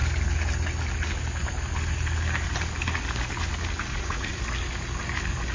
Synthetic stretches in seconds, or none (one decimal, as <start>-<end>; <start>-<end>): 3.9-4.4

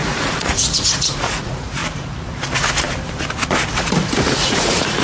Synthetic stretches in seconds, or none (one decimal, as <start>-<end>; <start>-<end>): 0.0-1.8; 4.2-5.0

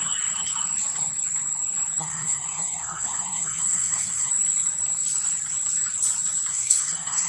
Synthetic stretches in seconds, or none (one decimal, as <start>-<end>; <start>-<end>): 2.0-4.3; 6.5-7.3

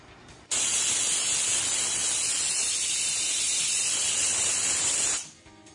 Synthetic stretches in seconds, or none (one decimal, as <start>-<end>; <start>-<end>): none

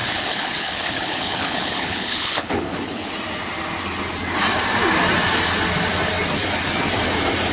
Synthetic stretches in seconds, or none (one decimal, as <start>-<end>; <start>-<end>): 0.0-3.1